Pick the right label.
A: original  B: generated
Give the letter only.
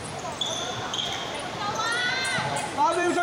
B